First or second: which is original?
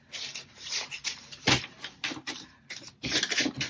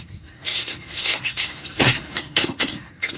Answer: first